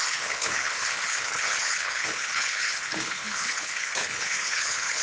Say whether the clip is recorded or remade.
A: remade